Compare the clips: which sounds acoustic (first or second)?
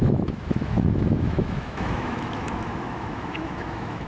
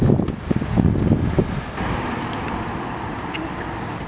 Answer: second